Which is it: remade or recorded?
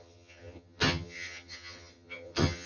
remade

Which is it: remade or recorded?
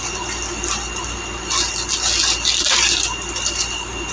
recorded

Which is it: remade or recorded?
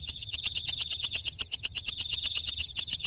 remade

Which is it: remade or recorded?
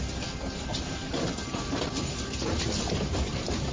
recorded